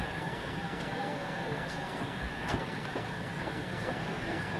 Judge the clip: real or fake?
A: fake